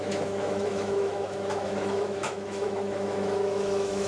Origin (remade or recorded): remade